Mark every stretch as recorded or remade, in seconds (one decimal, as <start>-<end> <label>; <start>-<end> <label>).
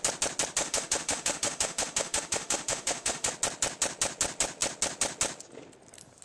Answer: 0.0-0.6 recorded; 0.6-3.3 remade; 3.3-6.2 recorded